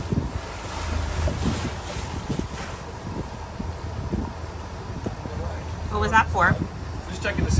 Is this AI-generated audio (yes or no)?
no